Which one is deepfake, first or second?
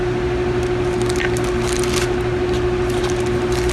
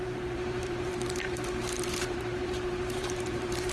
second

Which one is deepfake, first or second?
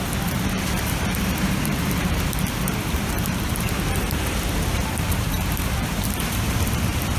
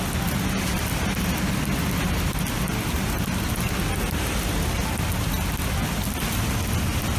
first